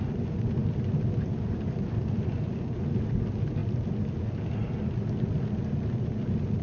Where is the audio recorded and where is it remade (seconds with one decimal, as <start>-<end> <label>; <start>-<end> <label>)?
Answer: 0.0-6.6 recorded